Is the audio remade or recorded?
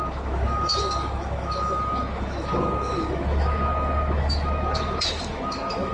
remade